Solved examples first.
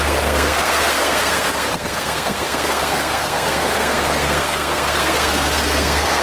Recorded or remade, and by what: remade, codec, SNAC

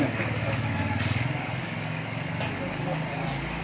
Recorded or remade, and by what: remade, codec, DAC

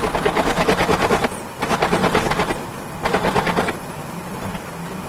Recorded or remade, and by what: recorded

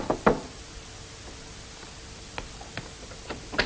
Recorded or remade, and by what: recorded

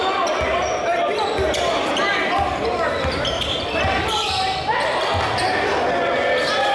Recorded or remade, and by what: recorded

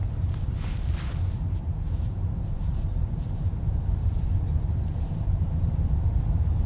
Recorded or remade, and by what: remade, vocoder, BigVGAN v2